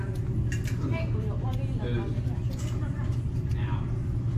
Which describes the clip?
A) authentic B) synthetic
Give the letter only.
A